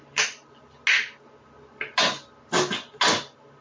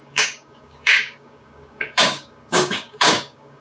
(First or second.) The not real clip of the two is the second